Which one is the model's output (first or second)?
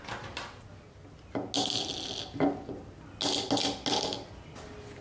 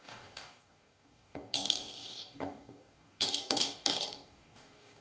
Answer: second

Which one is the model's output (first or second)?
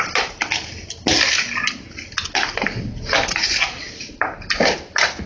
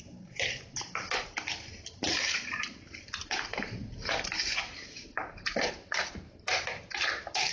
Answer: second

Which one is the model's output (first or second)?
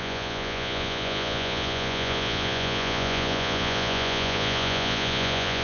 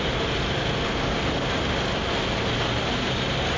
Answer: first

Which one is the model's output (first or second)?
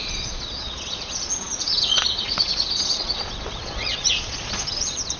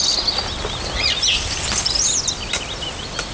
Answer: first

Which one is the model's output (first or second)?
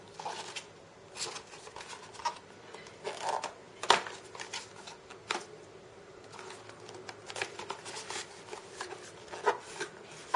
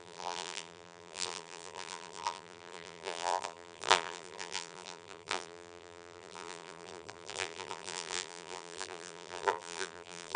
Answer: second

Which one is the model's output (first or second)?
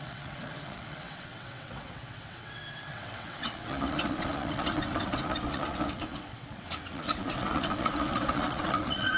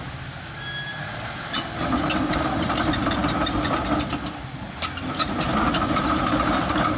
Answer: first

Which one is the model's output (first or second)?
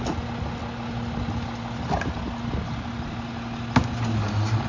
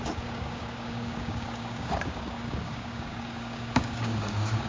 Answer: second